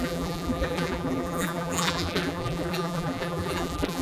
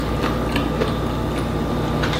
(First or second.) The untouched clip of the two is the second